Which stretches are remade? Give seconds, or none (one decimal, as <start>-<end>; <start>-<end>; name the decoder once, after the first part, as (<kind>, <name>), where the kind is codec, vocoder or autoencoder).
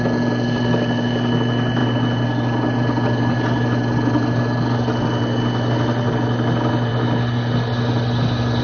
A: none